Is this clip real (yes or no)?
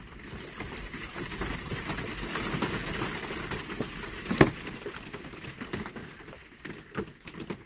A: no